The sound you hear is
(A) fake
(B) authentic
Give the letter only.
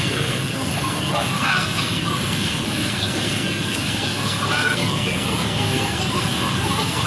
A